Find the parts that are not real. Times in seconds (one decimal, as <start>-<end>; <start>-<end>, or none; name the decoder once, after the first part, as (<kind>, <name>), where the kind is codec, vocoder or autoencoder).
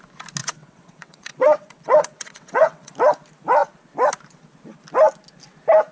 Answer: 0.4-2.9 (vocoder, WaveNeXt)